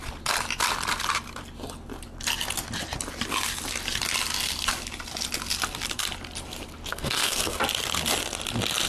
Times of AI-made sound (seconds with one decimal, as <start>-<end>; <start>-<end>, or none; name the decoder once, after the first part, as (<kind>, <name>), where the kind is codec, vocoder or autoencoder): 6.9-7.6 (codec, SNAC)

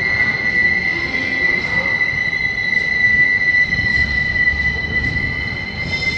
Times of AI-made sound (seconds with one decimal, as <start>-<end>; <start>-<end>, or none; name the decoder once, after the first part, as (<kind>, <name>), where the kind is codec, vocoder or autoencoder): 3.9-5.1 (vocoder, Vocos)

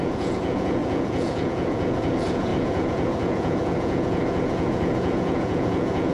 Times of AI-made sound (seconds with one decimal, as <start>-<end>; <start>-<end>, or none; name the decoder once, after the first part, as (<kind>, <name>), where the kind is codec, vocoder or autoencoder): 0.0-6.1 (vocoder, Vocos)

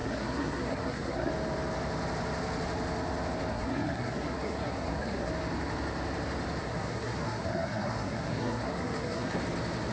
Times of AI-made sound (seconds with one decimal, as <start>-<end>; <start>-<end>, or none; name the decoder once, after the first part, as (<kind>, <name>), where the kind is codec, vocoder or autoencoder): 0.0-1.3 (codec, SNAC); 3.5-5.3; 6.6-9.4